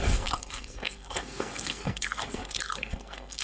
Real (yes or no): no